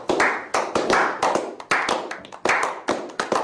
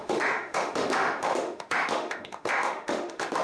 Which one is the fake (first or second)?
second